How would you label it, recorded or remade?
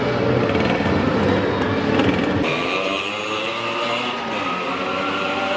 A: recorded